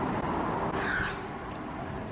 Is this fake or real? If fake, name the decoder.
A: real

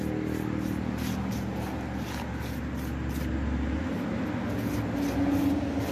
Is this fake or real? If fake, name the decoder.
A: real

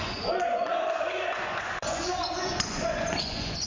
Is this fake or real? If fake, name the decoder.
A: fake, vocoder, Vocos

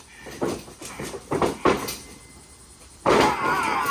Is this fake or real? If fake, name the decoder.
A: real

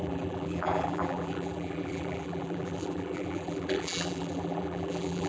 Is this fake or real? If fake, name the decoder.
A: fake, vocoder, BigVGAN v2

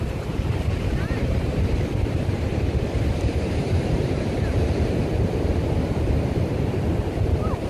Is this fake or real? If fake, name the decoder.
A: fake, vocoder, BigVGAN v2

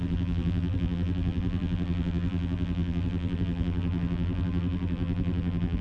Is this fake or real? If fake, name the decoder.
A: fake, vocoder, BigVGAN v2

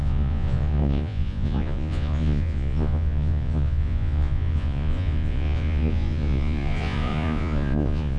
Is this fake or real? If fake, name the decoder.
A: fake, vocoder, Vocos